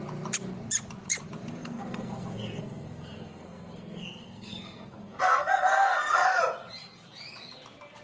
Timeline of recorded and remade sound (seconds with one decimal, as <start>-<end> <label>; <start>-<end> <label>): 0.0-1.6 recorded; 1.6-6.4 remade; 6.4-8.0 recorded